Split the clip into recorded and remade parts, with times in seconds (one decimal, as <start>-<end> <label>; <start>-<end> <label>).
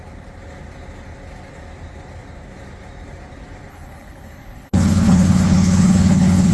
0.0-3.7 recorded; 3.7-6.5 remade